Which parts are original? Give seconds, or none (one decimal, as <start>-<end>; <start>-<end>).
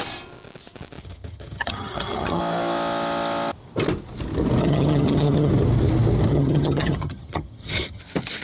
0.0-1.0; 2.4-4.6; 5.5-6.3; 8.0-8.4